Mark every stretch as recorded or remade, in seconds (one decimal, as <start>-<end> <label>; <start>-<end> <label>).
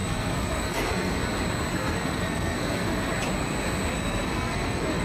0.0-1.2 remade; 1.2-1.7 recorded; 1.7-3.1 remade; 3.1-3.9 recorded; 3.9-5.0 remade